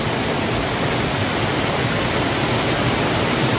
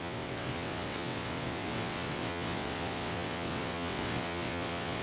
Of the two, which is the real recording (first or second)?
first